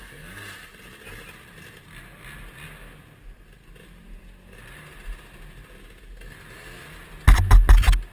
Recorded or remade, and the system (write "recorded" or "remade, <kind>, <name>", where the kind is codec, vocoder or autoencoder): recorded